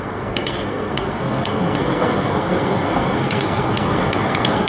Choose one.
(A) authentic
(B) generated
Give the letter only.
B